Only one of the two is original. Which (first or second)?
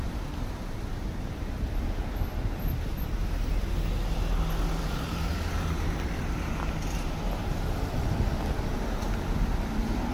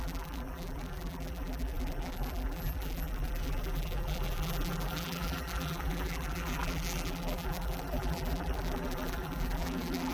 first